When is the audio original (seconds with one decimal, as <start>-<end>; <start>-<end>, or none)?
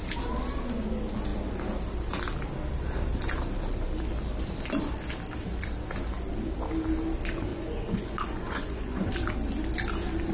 0.0-7.5; 9.1-10.3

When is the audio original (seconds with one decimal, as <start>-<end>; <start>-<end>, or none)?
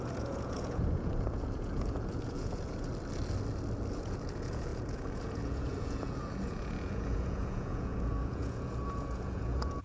2.9-3.9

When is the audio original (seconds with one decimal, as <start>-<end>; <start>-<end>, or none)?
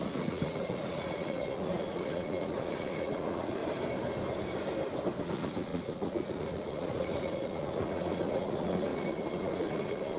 3.6-5.2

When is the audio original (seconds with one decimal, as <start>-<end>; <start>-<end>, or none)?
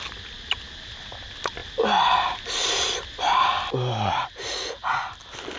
0.0-4.4; 5.0-5.6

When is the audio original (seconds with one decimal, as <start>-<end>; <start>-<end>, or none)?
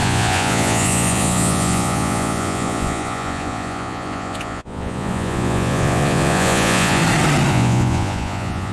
7.0-7.5